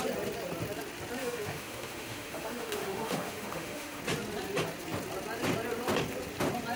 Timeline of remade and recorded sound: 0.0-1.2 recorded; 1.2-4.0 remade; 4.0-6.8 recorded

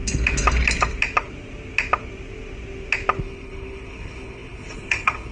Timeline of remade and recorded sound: 0.0-3.2 recorded; 3.2-5.3 remade

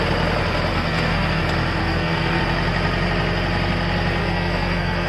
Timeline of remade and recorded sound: 0.0-0.7 recorded; 0.7-1.4 remade; 1.4-1.8 recorded; 1.8-2.4 remade; 2.4-4.2 recorded; 4.2-5.1 remade

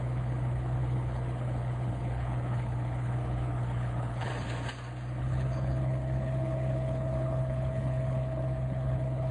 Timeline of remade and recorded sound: 0.0-4.3 remade; 4.3-5.2 recorded; 5.2-9.3 remade